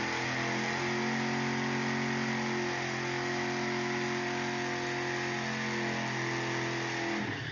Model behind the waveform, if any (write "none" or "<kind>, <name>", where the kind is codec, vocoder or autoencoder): none